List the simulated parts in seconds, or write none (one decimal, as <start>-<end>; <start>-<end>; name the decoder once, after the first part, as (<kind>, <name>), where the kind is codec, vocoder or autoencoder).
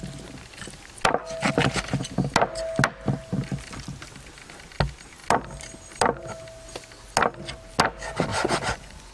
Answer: 8.3-9.1 (vocoder, Vocos)